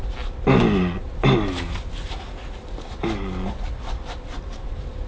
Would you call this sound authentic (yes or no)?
yes